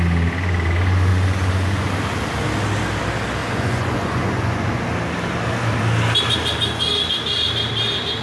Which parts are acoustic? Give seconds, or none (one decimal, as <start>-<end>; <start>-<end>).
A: 0.0-1.1; 1.9-3.4; 4.8-8.2